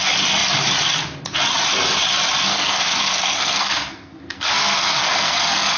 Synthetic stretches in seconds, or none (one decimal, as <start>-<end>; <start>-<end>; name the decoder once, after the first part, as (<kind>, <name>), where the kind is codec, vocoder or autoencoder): 2.5-5.8 (codec, SNAC)